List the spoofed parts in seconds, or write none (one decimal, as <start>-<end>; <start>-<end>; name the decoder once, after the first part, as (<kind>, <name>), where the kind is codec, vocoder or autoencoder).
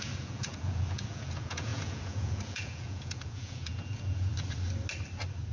0.0-4.3 (vocoder, Vocos)